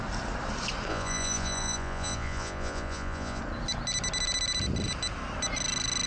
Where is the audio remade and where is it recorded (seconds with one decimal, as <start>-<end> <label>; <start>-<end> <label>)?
0.0-0.9 recorded; 0.9-3.4 remade; 3.4-6.1 recorded